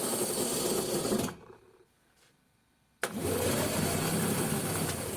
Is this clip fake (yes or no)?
no